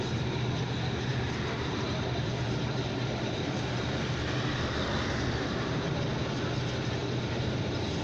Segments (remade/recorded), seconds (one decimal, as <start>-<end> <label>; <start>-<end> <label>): 0.0-1.1 recorded; 1.1-5.9 remade; 5.9-7.0 recorded; 7.0-7.6 remade; 7.6-8.0 recorded